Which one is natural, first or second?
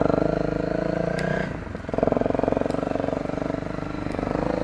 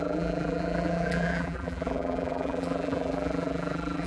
first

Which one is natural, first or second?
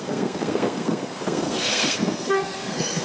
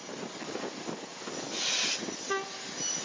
second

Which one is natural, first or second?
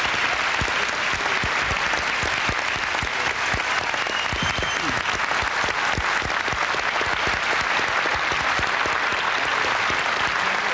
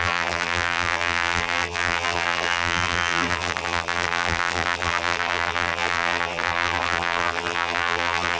first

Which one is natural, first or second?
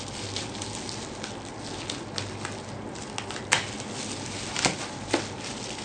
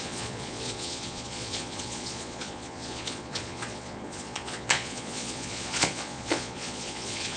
first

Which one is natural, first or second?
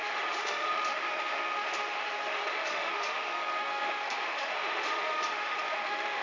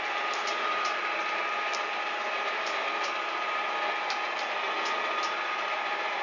second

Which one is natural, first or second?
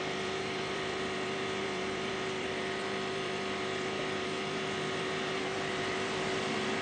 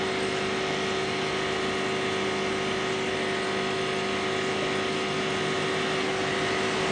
second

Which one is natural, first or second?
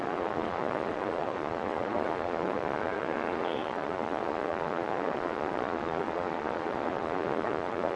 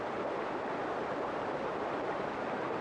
second